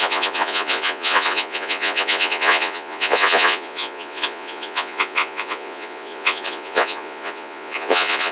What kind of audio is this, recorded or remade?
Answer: remade